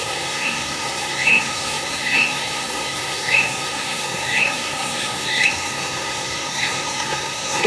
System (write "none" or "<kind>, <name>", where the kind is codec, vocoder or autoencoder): codec, SNAC